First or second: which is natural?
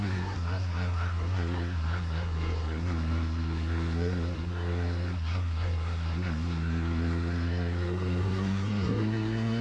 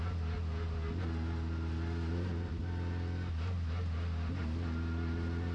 second